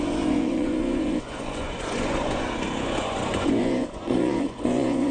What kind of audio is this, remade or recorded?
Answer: remade